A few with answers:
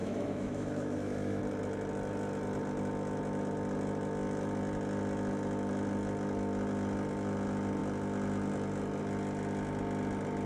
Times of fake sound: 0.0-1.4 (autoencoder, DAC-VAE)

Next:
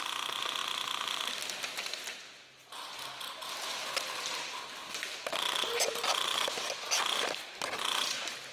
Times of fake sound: none

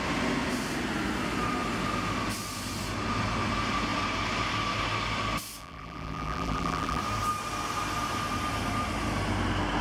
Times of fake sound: 5.6-7.0 (vocoder, BigVGAN v2)

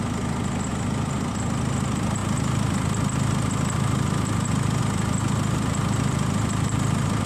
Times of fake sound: 0.7-1.3 (vocoder, BigVGAN v2)

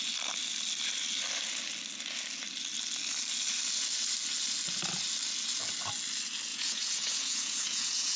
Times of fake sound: 6.5-8.2 (vocoder, Vocos)

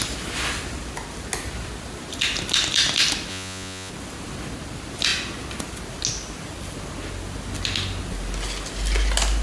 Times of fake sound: 3.3-3.9 (vocoder, Vocos)